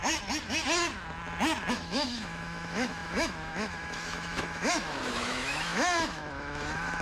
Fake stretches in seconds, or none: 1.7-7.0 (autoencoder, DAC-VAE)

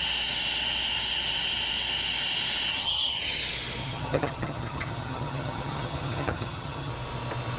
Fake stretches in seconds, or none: 2.7-3.4 (vocoder, HiFi-GAN); 3.8-6.9

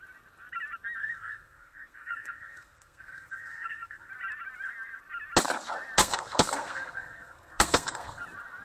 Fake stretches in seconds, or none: 1.0-4.1 (codec, SNAC); 6.0-8.2